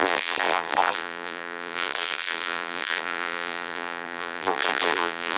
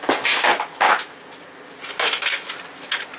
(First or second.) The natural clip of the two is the second